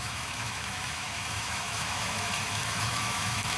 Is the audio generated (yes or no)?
yes